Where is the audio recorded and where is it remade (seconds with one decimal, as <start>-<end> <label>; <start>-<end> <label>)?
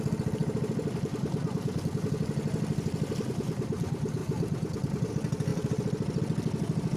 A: 0.0-4.2 recorded; 4.2-5.1 remade; 5.1-5.5 recorded; 5.5-6.2 remade; 6.2-7.0 recorded